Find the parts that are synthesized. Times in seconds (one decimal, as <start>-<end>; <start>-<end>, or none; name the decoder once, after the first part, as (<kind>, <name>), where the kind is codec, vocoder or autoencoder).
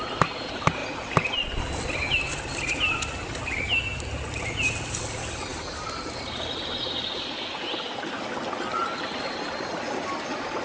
none